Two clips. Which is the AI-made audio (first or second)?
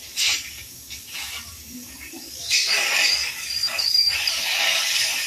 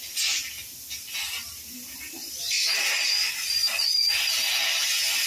first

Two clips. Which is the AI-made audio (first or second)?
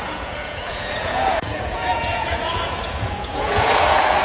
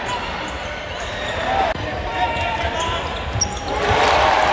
first